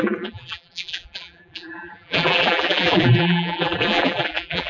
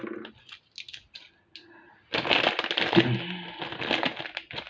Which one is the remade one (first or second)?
first